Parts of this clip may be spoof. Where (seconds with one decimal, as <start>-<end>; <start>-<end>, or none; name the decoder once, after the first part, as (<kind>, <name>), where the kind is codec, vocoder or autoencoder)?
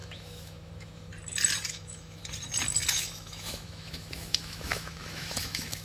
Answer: 0.0-1.1 (autoencoder, DAC-VAE); 1.7-2.2; 2.9-5.8